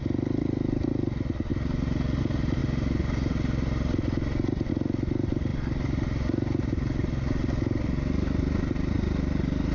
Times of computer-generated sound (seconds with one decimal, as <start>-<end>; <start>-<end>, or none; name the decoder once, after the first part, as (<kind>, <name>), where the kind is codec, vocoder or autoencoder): none

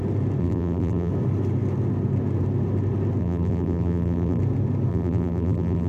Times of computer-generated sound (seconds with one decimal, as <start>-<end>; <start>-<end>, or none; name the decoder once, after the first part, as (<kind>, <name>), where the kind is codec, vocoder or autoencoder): 0.4-1.1 (vocoder, BigVGAN v2); 3.2-4.4; 4.9-5.9

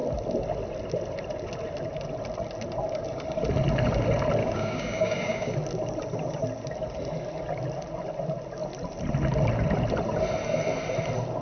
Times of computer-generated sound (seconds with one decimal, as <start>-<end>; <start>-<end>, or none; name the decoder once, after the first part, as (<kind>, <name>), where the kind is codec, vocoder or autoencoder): 4.4-5.5 (codec, DAC)